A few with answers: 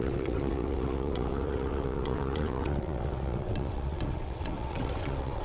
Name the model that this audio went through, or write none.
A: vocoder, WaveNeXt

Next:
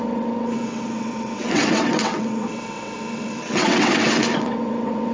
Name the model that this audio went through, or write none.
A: vocoder, WaveNeXt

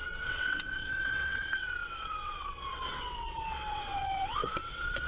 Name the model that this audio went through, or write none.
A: vocoder, WaveNeXt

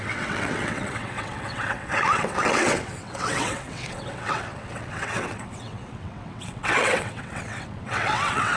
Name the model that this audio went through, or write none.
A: vocoder, WaveNeXt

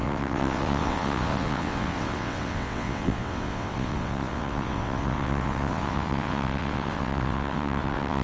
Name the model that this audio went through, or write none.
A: vocoder, WaveNeXt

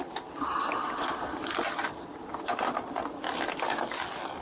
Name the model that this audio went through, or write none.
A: none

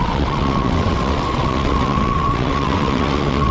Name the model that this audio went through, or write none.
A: vocoder, WaveNeXt